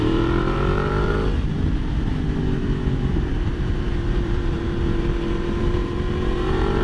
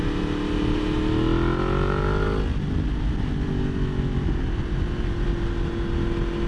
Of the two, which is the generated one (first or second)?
first